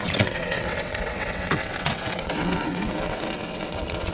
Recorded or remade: remade